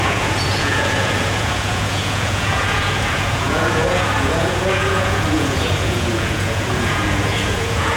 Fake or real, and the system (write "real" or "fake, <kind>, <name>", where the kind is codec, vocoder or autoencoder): fake, vocoder, Vocos